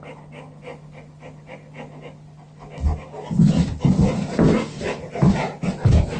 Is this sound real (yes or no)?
yes